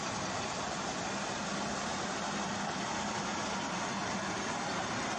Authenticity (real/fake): real